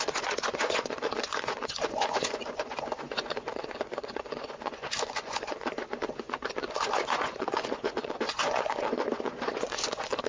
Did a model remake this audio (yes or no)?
yes